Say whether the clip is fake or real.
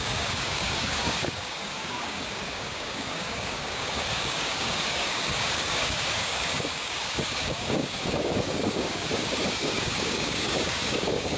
fake